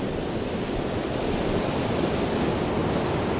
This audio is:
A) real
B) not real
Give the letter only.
A